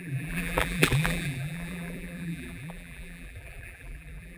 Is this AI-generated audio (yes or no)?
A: yes